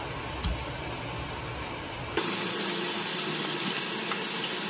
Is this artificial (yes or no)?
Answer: no